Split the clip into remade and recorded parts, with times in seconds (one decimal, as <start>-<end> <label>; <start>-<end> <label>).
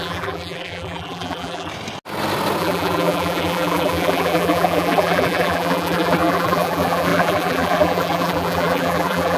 0.0-1.7 remade; 1.7-2.6 recorded; 2.6-9.4 remade